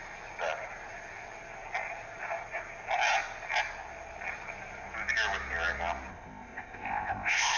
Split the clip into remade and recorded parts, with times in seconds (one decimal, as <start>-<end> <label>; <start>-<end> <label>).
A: 0.0-6.1 recorded; 6.1-7.6 remade